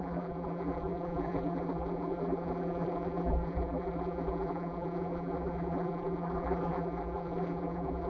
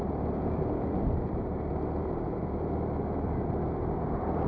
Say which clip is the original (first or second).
second